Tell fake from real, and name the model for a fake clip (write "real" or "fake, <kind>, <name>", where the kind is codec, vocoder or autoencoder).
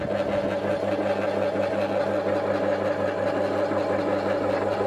real